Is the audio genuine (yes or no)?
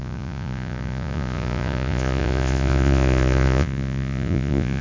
no